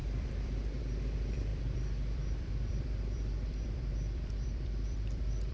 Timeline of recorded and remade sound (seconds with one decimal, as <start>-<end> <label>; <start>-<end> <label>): 0.0-5.5 remade